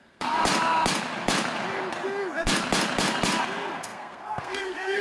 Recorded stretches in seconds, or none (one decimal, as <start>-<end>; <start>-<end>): 0.4-3.4

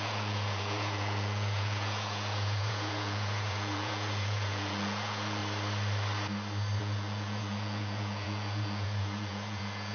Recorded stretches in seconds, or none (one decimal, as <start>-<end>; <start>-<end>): 5.4-6.8